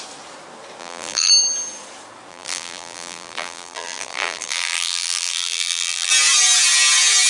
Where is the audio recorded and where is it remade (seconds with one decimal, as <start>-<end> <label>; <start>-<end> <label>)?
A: 0.0-0.8 recorded; 0.8-1.3 remade; 1.3-2.3 recorded; 2.3-6.1 remade; 6.1-7.3 recorded